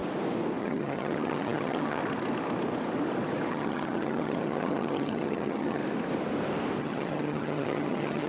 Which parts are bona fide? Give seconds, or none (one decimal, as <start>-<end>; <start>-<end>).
0.0-0.6; 2.0-3.5; 5.8-6.8

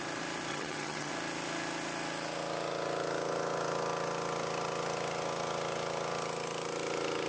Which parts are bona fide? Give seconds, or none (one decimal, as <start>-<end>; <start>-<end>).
0.0-0.5; 1.1-7.3